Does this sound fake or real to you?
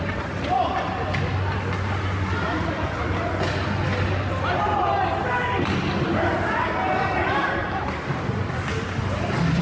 real